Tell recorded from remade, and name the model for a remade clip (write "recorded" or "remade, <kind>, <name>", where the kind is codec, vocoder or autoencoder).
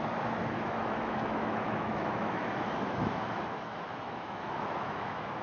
remade, autoencoder, DAC-VAE